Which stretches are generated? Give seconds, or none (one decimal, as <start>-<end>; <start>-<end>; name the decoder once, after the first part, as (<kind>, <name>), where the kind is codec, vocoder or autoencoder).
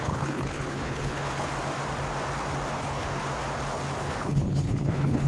0.0-1.5 (codec, HILCodec); 2.7-3.2; 4.0-5.3